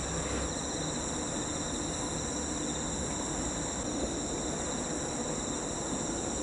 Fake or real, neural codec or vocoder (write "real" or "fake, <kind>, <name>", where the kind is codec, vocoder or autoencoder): real